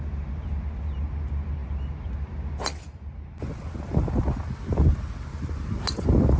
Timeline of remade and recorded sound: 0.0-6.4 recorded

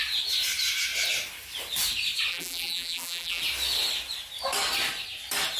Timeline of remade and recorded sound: 0.0-2.3 recorded; 2.3-3.4 remade; 3.4-5.6 recorded

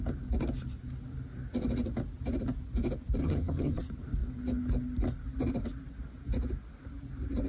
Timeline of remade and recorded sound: 0.0-3.2 recorded; 3.2-3.8 remade; 3.8-7.5 recorded

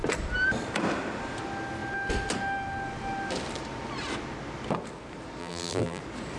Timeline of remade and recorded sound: 0.0-5.4 recorded; 5.4-6.0 remade; 6.0-6.4 recorded